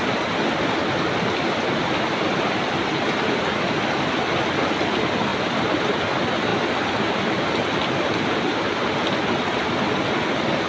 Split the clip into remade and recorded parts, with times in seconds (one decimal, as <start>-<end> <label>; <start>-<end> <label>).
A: 0.0-5.3 recorded; 5.3-6.0 remade; 6.0-10.7 recorded